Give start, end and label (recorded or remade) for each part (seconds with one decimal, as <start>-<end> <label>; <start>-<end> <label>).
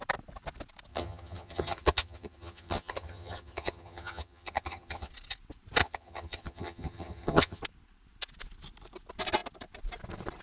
0.0-0.9 recorded; 0.9-5.1 remade; 5.1-5.8 recorded; 5.8-7.6 remade; 7.6-10.4 recorded